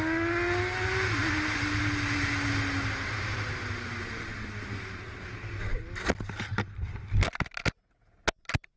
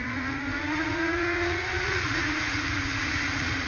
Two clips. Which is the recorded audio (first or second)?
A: first